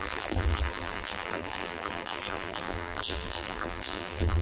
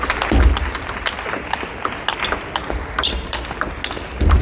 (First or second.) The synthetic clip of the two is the first